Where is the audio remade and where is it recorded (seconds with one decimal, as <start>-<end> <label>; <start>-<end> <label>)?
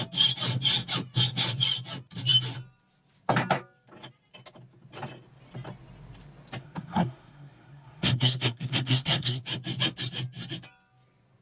0.0-6.6 recorded; 6.6-9.4 remade; 9.4-11.4 recorded